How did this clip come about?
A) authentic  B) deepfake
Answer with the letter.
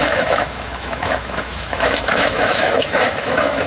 B